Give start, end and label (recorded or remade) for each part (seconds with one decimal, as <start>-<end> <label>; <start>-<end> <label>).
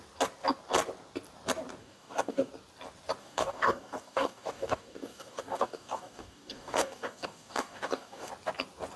0.0-1.8 recorded; 1.8-2.5 remade; 2.5-3.2 recorded; 3.2-8.3 remade; 8.3-9.0 recorded